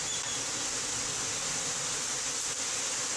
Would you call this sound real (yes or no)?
yes